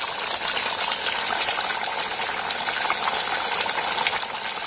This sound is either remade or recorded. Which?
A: recorded